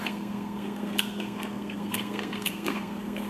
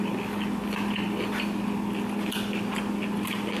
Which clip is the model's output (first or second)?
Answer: first